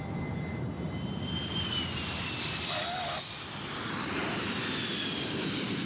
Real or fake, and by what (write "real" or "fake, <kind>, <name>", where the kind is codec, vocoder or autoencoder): real